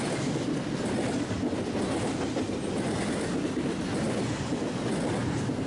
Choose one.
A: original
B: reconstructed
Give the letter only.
A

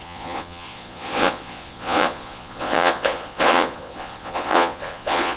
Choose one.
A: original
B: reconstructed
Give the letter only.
B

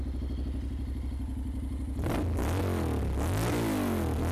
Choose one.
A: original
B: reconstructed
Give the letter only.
A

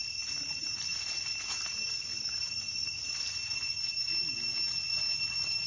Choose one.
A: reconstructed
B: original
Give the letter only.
B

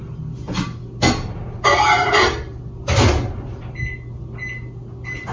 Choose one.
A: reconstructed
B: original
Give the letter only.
B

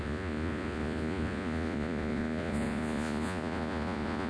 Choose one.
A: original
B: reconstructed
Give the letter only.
B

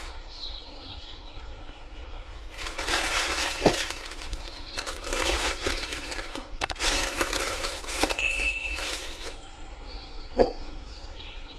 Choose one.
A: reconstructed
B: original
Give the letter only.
A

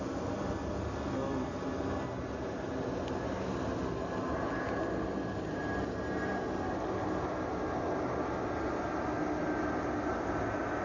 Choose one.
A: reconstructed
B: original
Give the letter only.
B